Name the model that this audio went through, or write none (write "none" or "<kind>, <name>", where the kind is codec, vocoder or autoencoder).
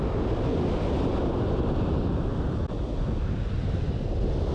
none